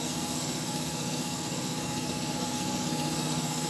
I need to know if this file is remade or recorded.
remade